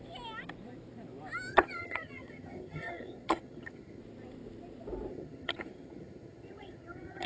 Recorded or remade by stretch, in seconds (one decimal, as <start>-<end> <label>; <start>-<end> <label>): 0.0-1.5 recorded; 1.5-4.0 remade; 4.0-5.1 recorded; 5.1-7.3 remade